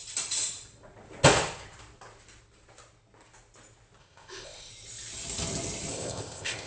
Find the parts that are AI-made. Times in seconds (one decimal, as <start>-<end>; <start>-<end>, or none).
4.0-4.7; 5.9-6.7